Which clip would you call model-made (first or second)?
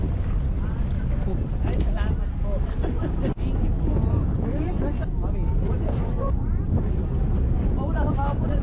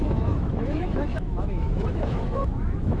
second